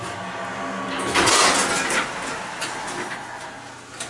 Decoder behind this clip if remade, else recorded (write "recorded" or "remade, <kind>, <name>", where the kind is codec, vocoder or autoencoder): recorded